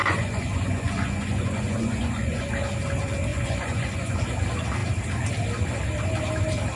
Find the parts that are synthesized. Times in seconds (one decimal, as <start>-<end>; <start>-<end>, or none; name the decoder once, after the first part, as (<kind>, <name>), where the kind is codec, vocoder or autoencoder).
0.0-2.5 (vocoder, Vocos); 3.3-4.2